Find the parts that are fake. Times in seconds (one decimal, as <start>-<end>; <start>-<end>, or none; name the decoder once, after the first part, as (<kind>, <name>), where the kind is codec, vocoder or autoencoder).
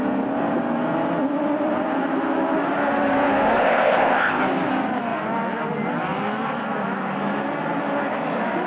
3.6-4.4 (codec, ZipCodec)